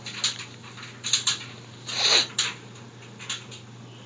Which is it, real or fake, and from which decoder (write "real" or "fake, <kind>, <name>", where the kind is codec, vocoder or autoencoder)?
real